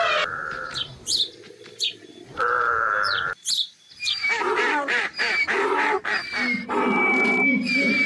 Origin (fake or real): fake